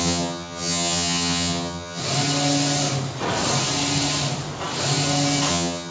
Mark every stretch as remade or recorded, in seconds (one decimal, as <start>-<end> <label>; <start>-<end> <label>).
0.0-2.0 remade; 2.0-5.5 recorded; 5.5-5.9 remade